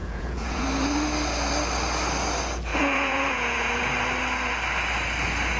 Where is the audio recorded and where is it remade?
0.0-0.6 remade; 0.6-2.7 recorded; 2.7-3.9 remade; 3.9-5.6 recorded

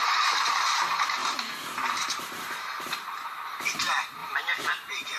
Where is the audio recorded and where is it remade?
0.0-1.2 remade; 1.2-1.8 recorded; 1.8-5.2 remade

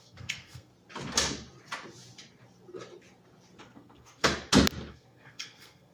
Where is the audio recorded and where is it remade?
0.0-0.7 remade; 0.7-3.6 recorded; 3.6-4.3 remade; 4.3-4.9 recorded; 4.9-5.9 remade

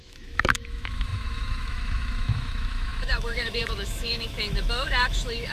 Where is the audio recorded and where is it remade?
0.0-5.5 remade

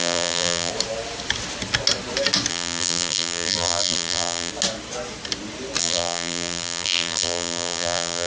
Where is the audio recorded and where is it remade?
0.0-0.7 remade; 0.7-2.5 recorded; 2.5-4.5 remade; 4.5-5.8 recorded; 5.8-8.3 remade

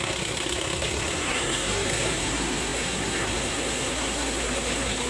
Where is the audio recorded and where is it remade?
0.0-5.1 remade

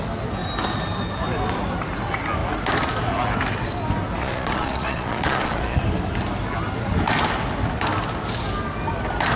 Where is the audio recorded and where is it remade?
0.0-4.2 recorded; 4.2-5.8 remade; 5.8-9.4 recorded

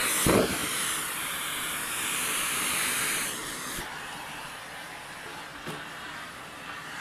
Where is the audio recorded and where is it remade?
0.0-0.6 recorded; 0.6-4.5 remade; 4.5-7.0 recorded